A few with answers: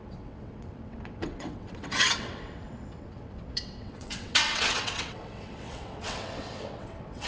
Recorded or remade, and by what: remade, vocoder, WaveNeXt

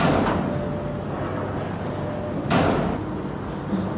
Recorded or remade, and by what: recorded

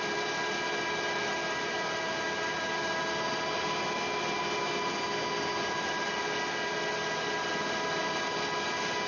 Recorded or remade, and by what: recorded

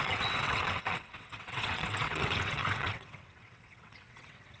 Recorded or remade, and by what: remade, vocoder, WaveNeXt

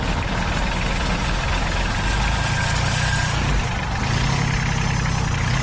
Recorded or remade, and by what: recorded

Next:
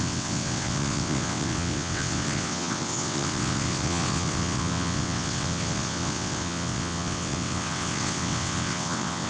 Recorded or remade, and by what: remade, vocoder, WaveNeXt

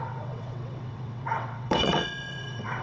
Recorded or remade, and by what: remade, vocoder, WaveNeXt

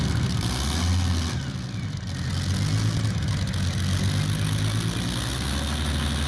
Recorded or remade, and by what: recorded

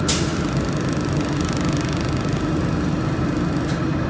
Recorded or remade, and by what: recorded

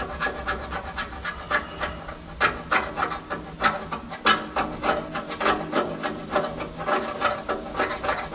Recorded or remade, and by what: recorded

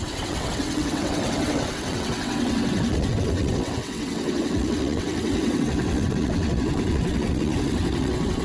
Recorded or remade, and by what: remade, vocoder, WaveNeXt